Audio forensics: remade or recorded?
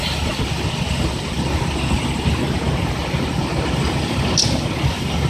recorded